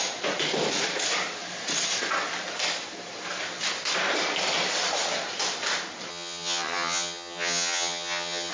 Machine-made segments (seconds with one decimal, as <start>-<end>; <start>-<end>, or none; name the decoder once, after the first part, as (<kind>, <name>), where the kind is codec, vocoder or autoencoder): 6.1-8.5 (vocoder, HiFi-GAN)